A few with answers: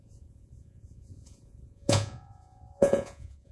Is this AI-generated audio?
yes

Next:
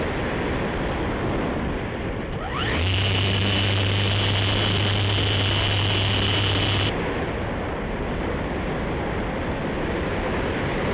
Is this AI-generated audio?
no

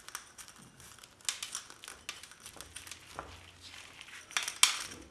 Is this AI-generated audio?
no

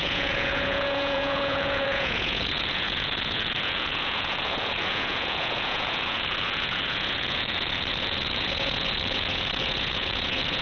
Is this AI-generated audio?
yes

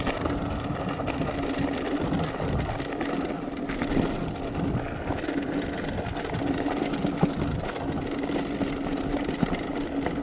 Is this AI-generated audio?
no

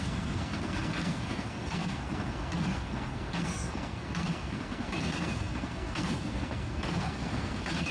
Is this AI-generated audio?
yes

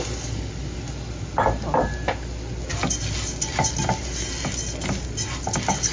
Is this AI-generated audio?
no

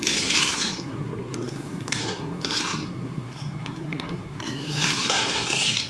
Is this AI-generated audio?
yes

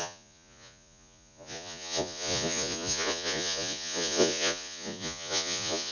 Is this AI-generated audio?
yes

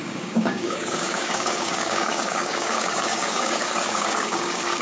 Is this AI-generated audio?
yes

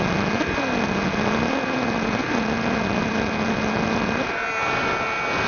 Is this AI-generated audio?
no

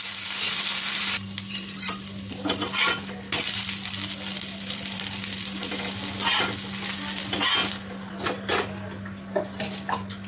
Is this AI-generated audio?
no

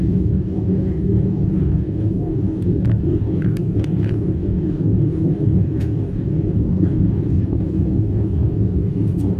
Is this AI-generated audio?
yes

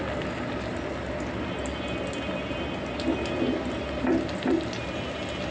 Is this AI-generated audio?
no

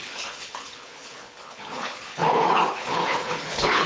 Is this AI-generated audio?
yes